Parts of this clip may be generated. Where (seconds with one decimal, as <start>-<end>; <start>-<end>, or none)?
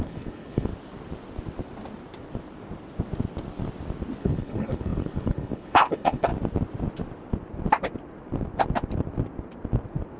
0.0-0.7; 4.2-6.3